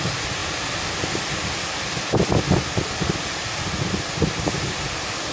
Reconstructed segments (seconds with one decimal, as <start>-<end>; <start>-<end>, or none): none